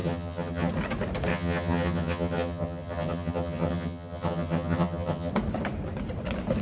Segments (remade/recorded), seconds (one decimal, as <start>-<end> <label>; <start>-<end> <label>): 0.0-0.7 remade; 0.7-1.3 recorded; 1.3-5.3 remade; 5.3-6.6 recorded